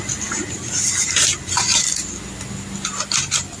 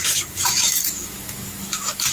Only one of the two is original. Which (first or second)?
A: first